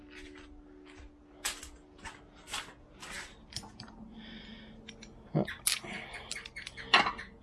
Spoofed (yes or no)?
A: no